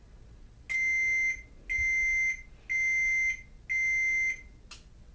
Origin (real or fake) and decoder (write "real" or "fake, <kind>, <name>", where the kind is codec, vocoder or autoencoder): real